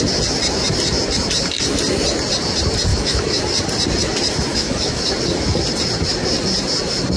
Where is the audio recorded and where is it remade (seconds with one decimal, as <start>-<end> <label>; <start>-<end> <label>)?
0.0-2.9 recorded; 2.9-3.4 remade; 3.4-4.5 recorded; 4.5-5.0 remade; 5.0-7.2 recorded